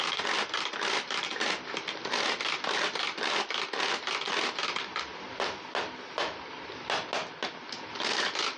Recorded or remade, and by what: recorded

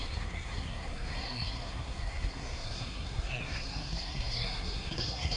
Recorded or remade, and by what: remade, codec, SNAC